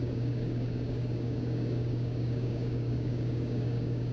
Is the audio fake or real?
fake